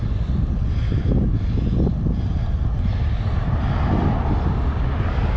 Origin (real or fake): real